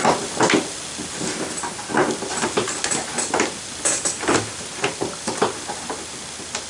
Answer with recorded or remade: recorded